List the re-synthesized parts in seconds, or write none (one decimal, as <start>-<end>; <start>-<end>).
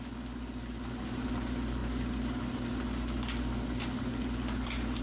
none